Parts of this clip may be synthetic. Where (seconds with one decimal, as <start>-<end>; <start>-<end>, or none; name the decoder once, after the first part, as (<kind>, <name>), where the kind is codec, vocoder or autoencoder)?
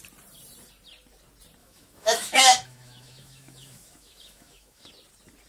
1.6-4.9 (autoencoder, DAC-VAE)